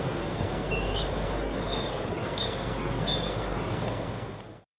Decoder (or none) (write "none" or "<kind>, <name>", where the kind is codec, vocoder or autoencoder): codec, SNAC